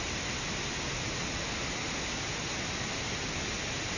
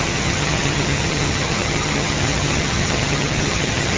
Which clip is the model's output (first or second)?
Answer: second